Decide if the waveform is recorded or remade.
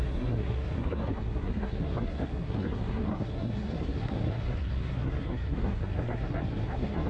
remade